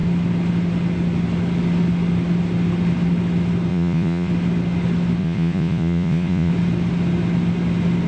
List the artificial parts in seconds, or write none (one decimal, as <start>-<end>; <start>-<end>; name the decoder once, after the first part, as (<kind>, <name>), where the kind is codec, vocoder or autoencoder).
3.7-4.3 (vocoder, Vocos); 5.2-6.5